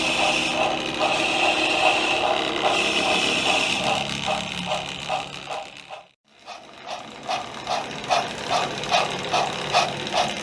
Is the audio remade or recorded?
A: recorded